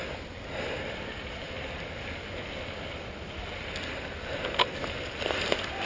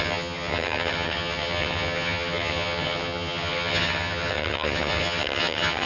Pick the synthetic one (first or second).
second